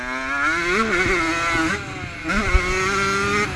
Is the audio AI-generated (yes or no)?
no